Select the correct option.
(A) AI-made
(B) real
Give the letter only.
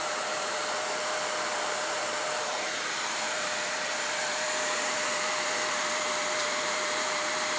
A